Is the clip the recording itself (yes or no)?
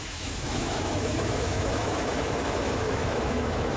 no